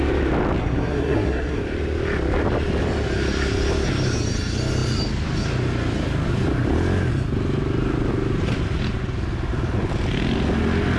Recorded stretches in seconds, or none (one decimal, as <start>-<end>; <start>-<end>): 0.0-0.6; 1.6-11.0